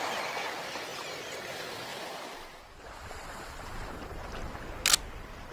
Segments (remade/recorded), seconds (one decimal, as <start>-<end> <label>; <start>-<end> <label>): 0.0-1.9 recorded; 1.9-4.1 remade; 4.1-5.5 recorded